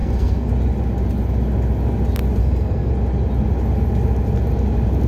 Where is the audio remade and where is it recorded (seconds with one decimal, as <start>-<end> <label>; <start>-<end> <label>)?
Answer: 0.0-0.5 remade; 0.5-2.4 recorded; 2.4-2.9 remade; 2.9-5.1 recorded